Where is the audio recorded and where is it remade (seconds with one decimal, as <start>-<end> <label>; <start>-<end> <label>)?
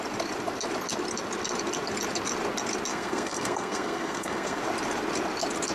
0.0-2.9 recorded; 2.9-4.6 remade; 4.6-5.7 recorded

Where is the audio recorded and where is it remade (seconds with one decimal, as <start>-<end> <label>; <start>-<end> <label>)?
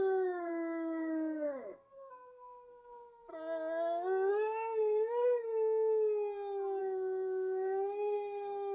0.0-3.3 remade; 3.3-4.3 recorded; 4.3-5.5 remade; 5.5-6.8 recorded; 6.8-8.7 remade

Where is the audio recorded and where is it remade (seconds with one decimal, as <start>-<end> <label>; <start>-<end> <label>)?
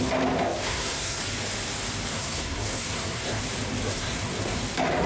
0.0-0.6 recorded; 0.6-1.2 remade; 1.2-2.1 recorded; 2.1-3.4 remade; 3.4-3.9 recorded; 3.9-4.6 remade; 4.6-5.1 recorded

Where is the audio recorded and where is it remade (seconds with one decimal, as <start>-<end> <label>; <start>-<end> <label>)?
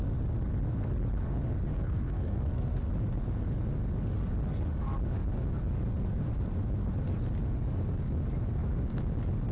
0.0-1.7 recorded; 1.7-2.9 remade; 2.9-9.5 recorded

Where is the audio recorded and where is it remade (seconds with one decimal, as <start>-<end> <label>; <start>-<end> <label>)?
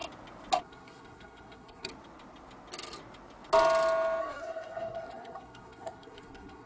0.0-0.6 recorded; 0.6-1.9 remade; 1.9-4.2 recorded; 4.2-6.7 remade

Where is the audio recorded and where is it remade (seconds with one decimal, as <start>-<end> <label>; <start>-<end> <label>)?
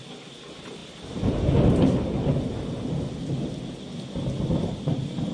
0.0-5.3 recorded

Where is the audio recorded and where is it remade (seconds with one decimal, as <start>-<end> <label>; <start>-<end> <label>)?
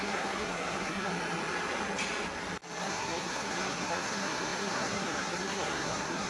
0.0-1.1 remade; 1.1-2.8 recorded; 2.8-6.3 remade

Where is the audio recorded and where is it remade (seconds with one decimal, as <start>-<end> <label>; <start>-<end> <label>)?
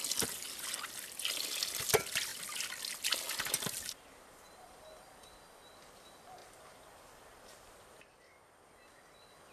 0.0-9.5 recorded